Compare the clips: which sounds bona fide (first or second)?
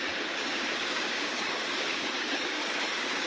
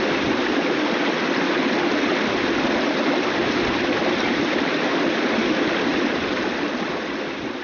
second